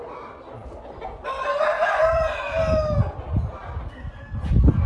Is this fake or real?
real